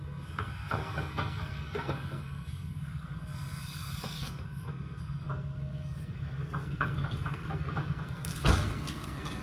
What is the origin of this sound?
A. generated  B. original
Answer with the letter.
A